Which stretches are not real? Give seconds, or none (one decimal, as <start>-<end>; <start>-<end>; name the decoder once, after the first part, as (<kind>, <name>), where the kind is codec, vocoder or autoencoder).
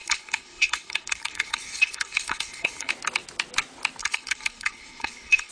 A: 0.0-2.9 (codec, HILCodec); 4.0-5.5